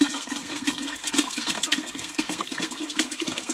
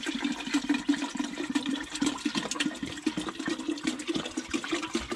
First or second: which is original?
second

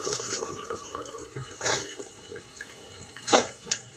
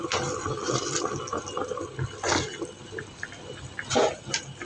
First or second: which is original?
second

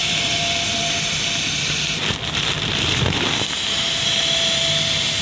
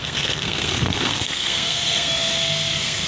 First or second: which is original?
first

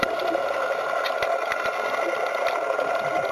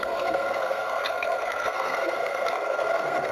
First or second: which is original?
first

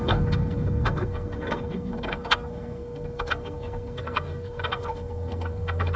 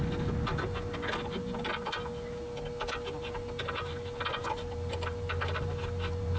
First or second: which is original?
second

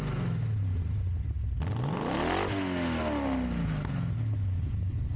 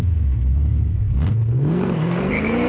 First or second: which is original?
first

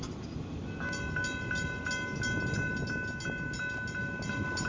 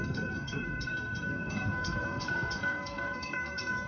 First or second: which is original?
first